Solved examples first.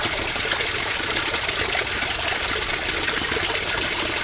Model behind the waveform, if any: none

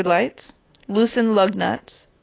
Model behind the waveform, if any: autoencoder, DAC-VAE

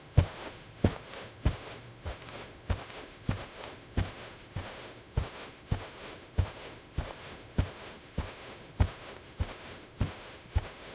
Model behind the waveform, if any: autoencoder, DAC-VAE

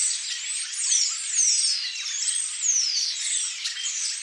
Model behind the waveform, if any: none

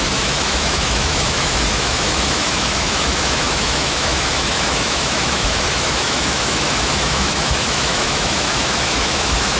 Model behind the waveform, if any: autoencoder, DAC-VAE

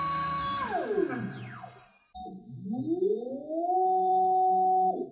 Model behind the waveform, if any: none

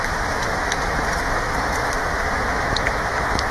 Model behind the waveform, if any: autoencoder, DAC-VAE